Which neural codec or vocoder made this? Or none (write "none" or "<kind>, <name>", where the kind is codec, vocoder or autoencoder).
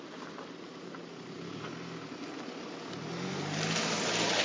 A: none